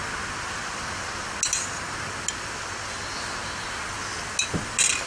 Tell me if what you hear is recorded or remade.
recorded